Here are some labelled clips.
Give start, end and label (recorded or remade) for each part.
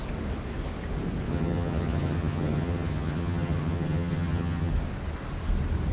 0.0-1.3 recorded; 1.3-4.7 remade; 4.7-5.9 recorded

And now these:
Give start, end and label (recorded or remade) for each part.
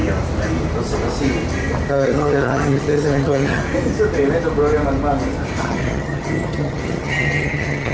0.0-1.9 recorded; 1.9-3.6 remade; 3.6-5.6 recorded; 5.6-7.9 remade